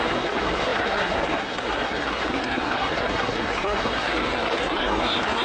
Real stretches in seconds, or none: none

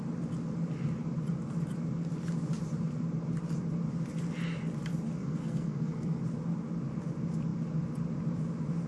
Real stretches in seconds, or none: 0.0-5.2; 6.2-8.9

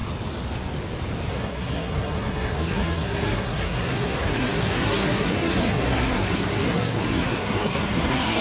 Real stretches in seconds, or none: 0.0-1.3

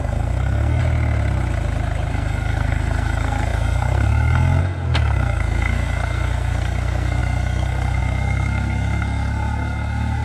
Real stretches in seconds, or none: 0.8-2.1

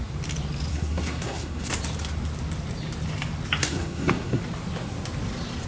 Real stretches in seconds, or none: 0.0-0.7; 1.7-3.6; 4.4-5.7